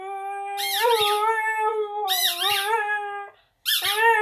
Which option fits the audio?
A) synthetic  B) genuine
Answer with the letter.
B